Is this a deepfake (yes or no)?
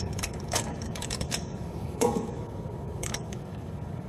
yes